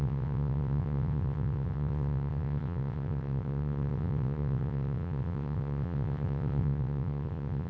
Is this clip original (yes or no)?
no